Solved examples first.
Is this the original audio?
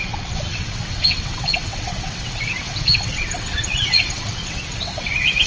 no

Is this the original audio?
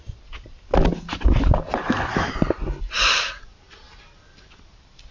yes